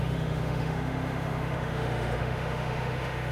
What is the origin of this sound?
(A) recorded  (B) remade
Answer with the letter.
B